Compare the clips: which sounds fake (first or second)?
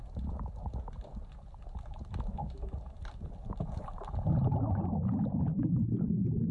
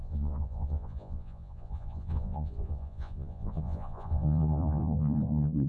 second